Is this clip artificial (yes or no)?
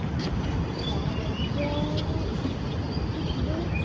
no